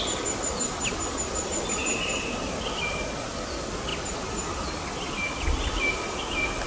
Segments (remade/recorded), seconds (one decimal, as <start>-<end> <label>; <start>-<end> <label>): 0.0-6.7 recorded